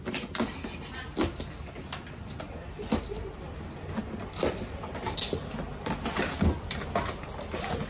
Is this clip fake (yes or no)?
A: no